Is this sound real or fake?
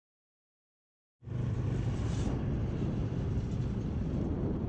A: real